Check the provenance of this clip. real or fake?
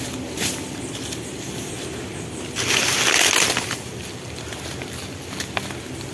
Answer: real